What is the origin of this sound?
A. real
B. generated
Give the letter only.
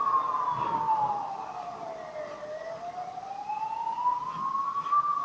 A